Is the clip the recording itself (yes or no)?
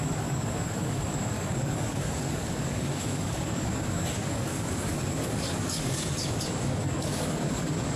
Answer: no